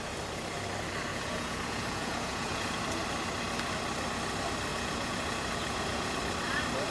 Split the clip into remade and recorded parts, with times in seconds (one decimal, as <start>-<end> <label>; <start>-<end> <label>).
0.0-1.1 recorded; 1.1-2.8 remade; 2.8-4.7 recorded; 4.7-6.2 remade; 6.2-6.9 recorded

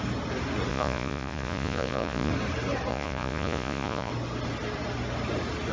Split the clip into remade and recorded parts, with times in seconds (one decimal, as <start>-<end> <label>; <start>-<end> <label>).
0.0-0.7 recorded; 0.7-2.3 remade; 2.3-2.9 recorded; 2.9-4.1 remade; 4.1-5.7 recorded

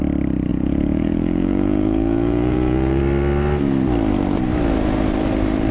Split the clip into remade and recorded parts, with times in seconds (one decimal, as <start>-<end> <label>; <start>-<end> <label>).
0.0-0.5 recorded; 0.5-3.0 remade; 3.0-5.7 recorded